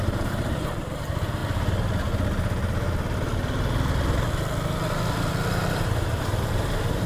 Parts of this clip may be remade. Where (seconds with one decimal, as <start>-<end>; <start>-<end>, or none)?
0.0-1.4; 5.7-7.1